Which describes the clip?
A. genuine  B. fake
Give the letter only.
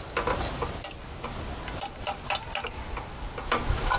A